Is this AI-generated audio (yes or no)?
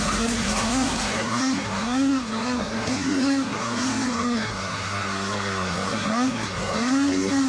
yes